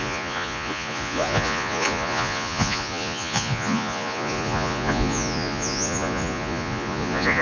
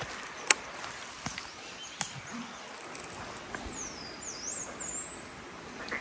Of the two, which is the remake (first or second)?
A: first